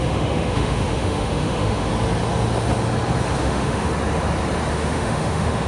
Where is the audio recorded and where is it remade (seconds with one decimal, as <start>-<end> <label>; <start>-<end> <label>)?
0.0-1.9 remade; 1.9-3.4 recorded; 3.4-3.9 remade; 3.9-4.7 recorded; 4.7-5.7 remade